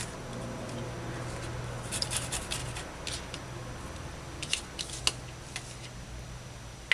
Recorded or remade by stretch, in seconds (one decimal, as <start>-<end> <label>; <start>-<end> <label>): 0.0-6.9 recorded